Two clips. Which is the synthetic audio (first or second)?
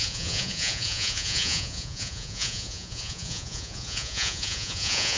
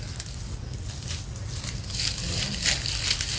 first